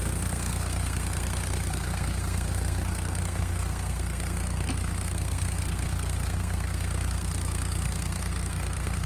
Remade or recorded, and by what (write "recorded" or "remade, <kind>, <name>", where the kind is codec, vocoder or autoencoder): remade, codec, SNAC